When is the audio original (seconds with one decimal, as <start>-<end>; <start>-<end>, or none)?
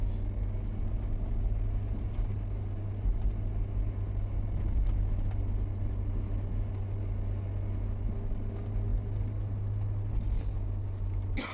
0.0-11.5